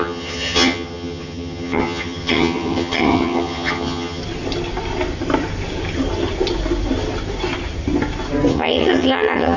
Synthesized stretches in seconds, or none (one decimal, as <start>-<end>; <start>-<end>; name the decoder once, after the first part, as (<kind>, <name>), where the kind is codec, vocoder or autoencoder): 0.0-4.2 (vocoder, HiFi-GAN); 8.5-9.6